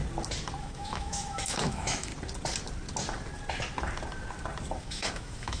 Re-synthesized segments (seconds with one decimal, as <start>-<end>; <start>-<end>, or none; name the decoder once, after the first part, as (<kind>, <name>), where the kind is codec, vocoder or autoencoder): 0.6-2.1 (autoencoder, DAC-VAE); 4.8-5.6